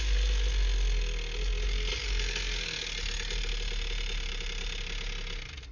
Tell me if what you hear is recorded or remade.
recorded